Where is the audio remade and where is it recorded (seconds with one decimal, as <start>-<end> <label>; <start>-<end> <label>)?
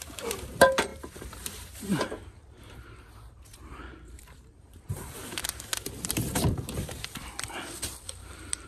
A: 0.0-5.7 remade; 5.7-8.2 recorded; 8.2-8.7 remade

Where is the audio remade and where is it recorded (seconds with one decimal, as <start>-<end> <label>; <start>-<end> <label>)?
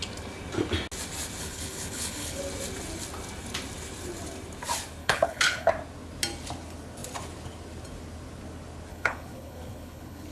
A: 0.0-1.4 recorded; 1.4-2.4 remade; 2.4-5.0 recorded; 5.0-5.7 remade; 5.7-8.9 recorded; 8.9-10.3 remade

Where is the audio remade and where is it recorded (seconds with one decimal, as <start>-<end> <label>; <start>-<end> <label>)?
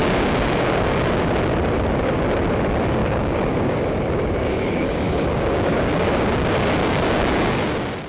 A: 0.0-1.0 remade; 1.0-3.0 recorded; 3.0-4.0 remade; 4.0-4.4 recorded; 4.4-6.3 remade; 6.3-6.8 recorded; 6.8-7.5 remade; 7.5-8.1 recorded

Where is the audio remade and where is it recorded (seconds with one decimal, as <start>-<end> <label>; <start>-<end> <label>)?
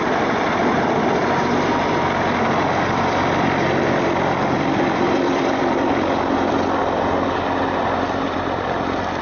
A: 0.0-9.2 recorded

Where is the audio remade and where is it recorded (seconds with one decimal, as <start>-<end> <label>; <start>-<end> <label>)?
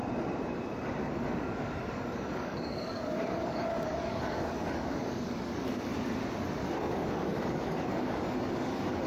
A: 0.0-1.1 recorded; 1.1-5.9 remade; 5.9-6.8 recorded; 6.8-9.1 remade